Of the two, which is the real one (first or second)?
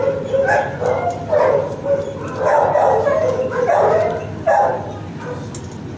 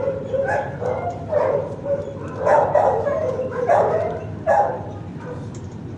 first